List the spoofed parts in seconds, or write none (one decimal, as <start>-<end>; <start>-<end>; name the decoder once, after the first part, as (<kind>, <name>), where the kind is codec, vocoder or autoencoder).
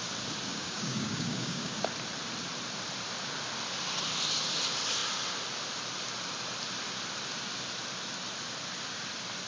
0.5-1.8 (codec, DAC)